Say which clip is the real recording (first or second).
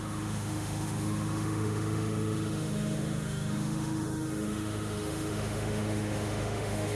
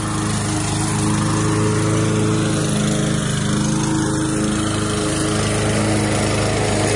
second